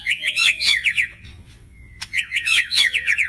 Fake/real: fake